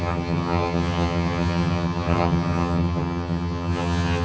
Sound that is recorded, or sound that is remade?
remade